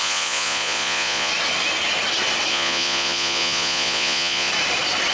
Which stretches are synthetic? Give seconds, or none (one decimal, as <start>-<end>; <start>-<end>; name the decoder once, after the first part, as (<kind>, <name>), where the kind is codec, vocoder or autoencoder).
0.0-1.3 (vocoder, Vocos); 2.5-4.5